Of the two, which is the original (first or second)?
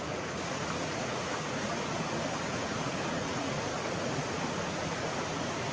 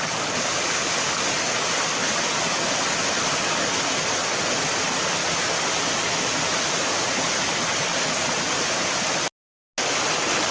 second